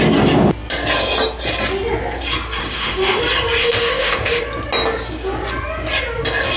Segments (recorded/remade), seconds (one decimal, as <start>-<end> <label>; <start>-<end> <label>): 0.0-2.6 recorded; 2.6-3.2 remade; 3.2-3.6 recorded; 3.6-4.4 remade; 4.4-6.6 recorded